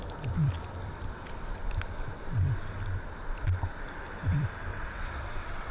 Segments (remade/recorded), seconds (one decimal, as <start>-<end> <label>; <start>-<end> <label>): 0.0-4.7 recorded; 4.7-5.7 remade